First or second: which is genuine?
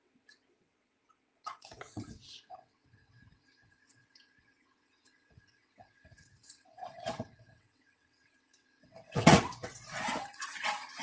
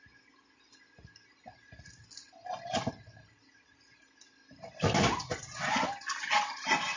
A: second